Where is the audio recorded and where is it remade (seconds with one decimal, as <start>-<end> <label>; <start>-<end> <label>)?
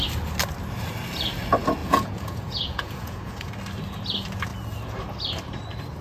0.0-1.8 recorded; 1.8-3.5 remade; 3.5-6.0 recorded